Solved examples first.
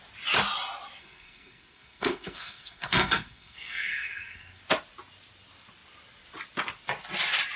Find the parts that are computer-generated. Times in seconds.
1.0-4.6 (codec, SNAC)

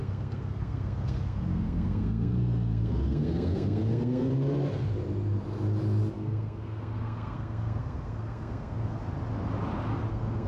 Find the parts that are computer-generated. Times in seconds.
0.0-4.3 (codec, SNAC); 6.1-9.0; 10.1-10.5

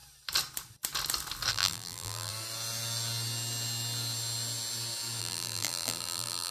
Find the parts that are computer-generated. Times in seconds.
1.5-2.3 (vocoder, BigVGAN v2); 5.2-6.5

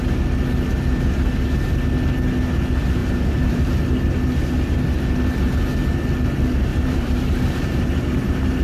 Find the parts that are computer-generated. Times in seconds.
3.0-3.8 (vocoder, BigVGAN v2); 6.7-8.6

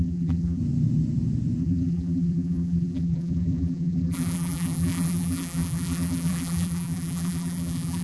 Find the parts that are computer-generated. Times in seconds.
0.0-0.6 (vocoder, BigVGAN v2); 1.6-8.0